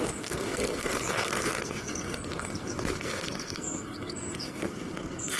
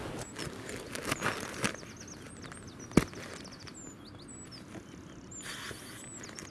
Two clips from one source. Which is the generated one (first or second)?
first